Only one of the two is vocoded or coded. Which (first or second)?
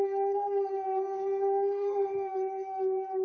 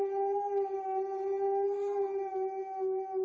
first